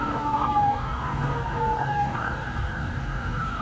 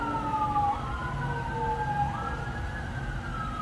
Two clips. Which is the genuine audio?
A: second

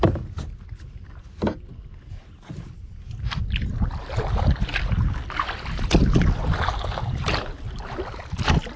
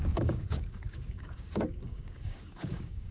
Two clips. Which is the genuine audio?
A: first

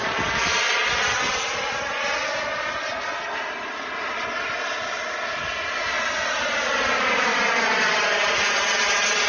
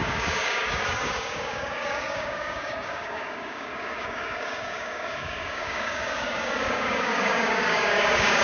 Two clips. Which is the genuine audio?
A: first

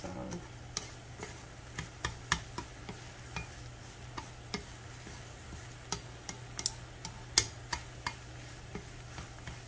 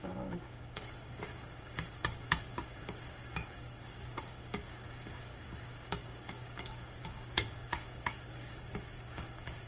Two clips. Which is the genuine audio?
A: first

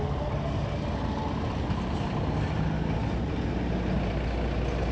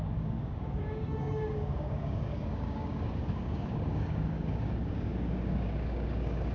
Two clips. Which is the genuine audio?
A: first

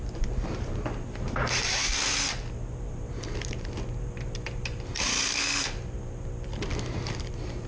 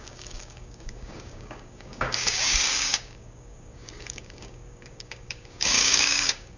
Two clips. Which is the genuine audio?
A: first